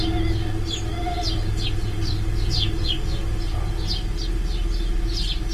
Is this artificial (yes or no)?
no